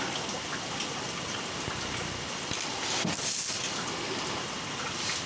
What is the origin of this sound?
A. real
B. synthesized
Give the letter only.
A